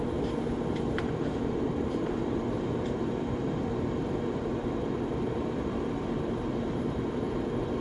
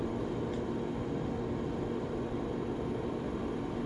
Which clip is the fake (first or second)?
first